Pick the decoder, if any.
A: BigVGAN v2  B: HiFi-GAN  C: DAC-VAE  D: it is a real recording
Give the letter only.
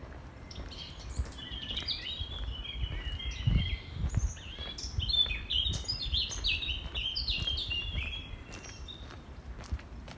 A